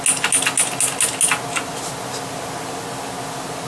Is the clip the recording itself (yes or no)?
yes